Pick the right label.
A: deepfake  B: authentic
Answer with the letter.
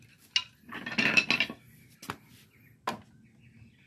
B